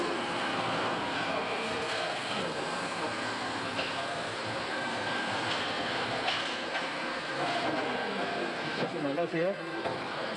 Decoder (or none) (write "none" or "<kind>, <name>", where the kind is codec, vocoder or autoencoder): codec, SNAC